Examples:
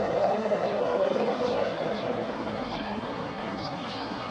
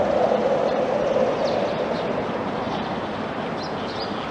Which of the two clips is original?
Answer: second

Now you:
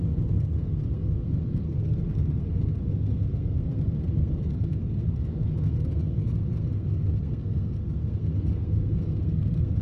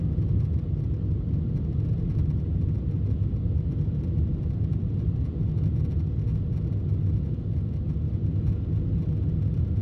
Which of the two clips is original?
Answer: second